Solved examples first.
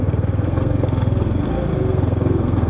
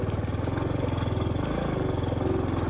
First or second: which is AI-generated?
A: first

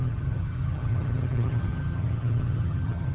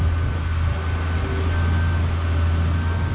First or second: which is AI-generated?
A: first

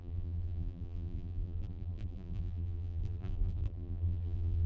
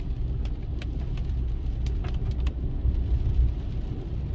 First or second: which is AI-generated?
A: first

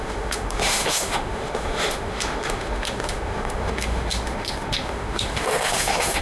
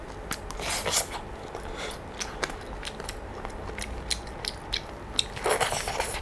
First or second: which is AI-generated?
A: first